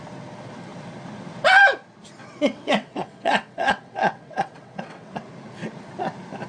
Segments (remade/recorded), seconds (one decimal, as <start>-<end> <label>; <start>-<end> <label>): 0.0-2.2 recorded; 2.2-5.1 remade; 5.1-6.5 recorded